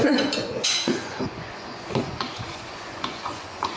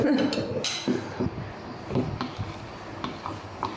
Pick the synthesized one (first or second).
first